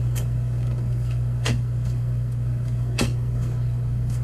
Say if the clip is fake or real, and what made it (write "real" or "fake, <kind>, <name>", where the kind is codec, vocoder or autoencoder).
fake, codec, SNAC